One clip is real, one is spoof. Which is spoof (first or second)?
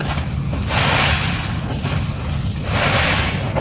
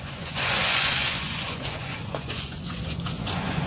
second